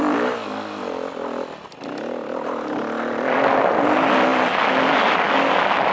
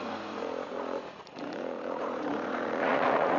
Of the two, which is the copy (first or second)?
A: second